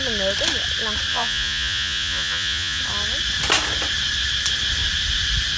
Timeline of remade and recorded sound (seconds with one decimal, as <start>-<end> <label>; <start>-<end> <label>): 0.0-1.1 recorded; 1.1-2.8 remade; 2.8-5.6 recorded